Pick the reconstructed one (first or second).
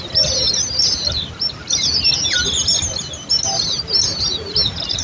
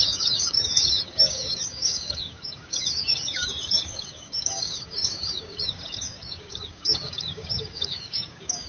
second